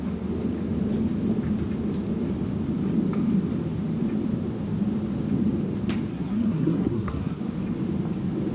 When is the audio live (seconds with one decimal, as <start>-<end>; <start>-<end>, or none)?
0.0-6.1; 7.4-8.5